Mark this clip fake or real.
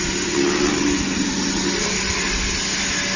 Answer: real